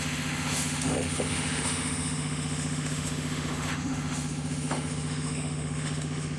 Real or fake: fake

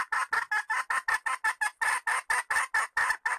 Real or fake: real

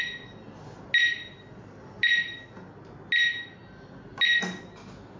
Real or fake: real